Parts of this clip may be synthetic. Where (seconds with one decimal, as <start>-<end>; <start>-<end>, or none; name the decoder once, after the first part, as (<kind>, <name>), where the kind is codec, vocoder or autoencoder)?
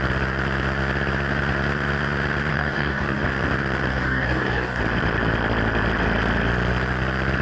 2.5-3.2 (codec, DAC); 3.9-4.8